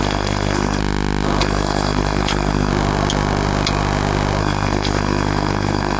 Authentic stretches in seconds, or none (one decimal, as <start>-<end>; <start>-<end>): 0.8-1.4; 2.7-4.4